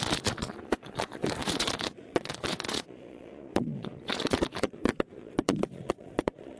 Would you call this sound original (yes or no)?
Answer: no